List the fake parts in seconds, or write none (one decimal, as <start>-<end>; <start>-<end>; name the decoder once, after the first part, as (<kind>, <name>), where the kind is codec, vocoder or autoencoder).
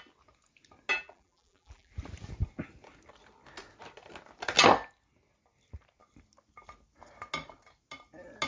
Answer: 0.9-1.9 (vocoder, BigVGAN v2)